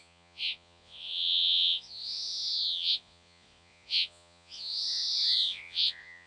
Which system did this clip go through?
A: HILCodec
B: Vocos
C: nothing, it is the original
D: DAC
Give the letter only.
B